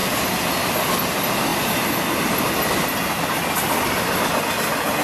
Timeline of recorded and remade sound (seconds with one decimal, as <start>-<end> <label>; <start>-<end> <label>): 0.0-5.0 recorded